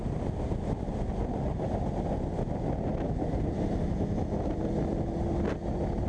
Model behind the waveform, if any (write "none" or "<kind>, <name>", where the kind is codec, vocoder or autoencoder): none